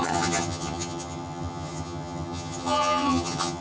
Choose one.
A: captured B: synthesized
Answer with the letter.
B